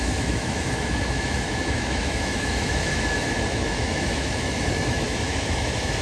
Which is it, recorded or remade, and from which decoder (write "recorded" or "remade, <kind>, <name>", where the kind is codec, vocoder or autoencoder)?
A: remade, autoencoder, DAC-VAE